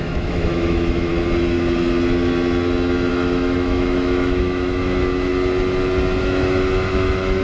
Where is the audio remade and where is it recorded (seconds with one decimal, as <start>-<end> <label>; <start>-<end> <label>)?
0.0-1.1 remade; 1.1-3.1 recorded; 3.1-5.3 remade; 5.3-6.2 recorded; 6.2-7.4 remade